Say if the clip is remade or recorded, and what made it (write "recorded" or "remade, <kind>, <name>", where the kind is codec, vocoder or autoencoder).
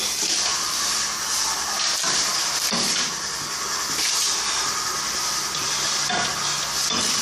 recorded